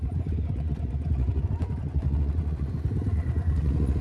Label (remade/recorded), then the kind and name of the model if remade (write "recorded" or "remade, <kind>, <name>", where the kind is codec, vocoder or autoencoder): remade, vocoder, Vocos